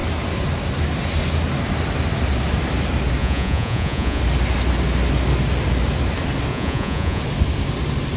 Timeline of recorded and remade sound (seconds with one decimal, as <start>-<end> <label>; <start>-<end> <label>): 0.0-3.2 recorded; 3.2-4.2 remade; 4.2-6.5 recorded; 6.5-7.2 remade; 7.2-8.2 recorded